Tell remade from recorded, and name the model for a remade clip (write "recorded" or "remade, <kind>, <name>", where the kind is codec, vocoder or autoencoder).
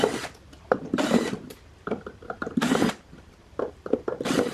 remade, vocoder, BigVGAN v2